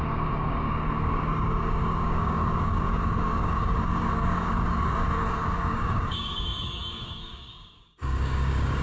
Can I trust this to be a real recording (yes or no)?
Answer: no